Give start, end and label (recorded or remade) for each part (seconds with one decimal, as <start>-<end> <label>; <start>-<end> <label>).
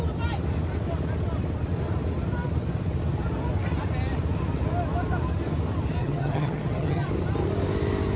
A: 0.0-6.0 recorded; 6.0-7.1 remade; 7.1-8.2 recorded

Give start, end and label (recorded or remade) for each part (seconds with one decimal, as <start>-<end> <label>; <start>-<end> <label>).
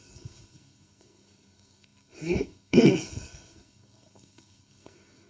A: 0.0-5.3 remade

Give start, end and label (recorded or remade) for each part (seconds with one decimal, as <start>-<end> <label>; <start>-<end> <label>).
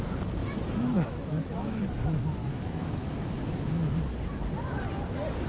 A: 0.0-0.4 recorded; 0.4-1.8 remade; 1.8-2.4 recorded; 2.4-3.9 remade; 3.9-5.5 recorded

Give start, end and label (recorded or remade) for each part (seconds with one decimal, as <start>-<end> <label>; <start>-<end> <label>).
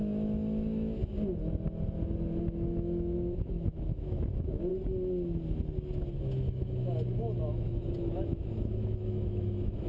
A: 0.0-1.0 remade; 1.0-2.4 recorded; 2.4-4.7 remade; 4.7-6.1 recorded; 6.1-9.9 remade